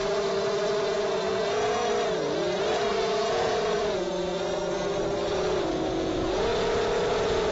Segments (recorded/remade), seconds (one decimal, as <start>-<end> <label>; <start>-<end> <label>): 0.0-0.6 recorded; 0.6-1.8 remade; 1.8-3.0 recorded; 3.0-4.1 remade; 4.1-5.3 recorded; 5.3-6.5 remade; 6.5-7.1 recorded; 7.1-7.5 remade